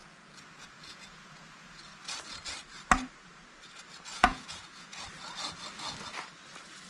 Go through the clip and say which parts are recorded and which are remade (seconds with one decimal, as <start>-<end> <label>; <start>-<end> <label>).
0.0-1.8 remade; 1.8-4.1 recorded; 4.1-5.0 remade; 5.0-6.9 recorded